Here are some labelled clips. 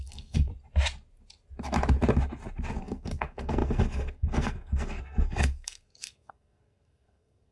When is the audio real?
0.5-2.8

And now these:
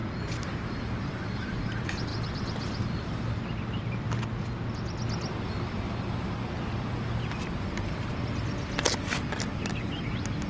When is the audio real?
0.0-10.5

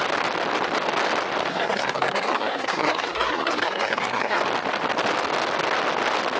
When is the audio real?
0.0-1.5; 4.4-6.4

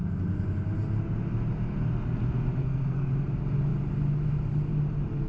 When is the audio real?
0.0-2.6; 3.1-5.3

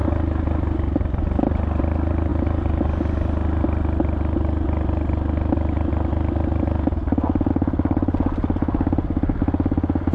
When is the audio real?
0.0-10.1

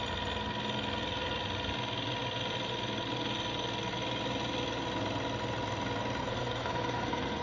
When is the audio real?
0.0-6.2

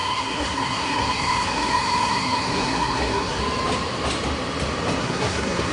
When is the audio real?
3.4-5.0

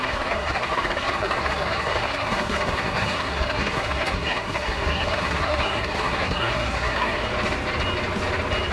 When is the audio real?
7.3-8.7